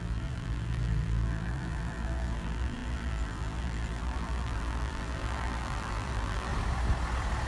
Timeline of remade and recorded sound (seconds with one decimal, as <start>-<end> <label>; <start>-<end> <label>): 0.0-6.5 remade; 6.5-7.5 recorded